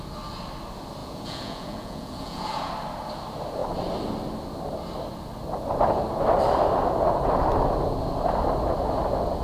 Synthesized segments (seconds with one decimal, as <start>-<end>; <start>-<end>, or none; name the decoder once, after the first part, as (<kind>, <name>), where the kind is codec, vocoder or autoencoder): 1.0-2.7 (vocoder, Vocos)